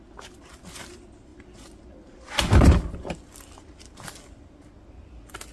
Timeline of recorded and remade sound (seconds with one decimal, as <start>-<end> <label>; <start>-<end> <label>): 0.0-5.5 recorded